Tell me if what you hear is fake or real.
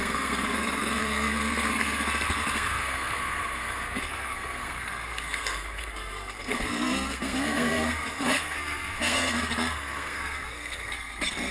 fake